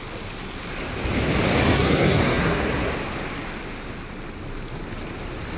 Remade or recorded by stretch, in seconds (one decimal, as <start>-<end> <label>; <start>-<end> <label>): 0.0-1.6 recorded; 1.6-2.9 remade; 2.9-5.6 recorded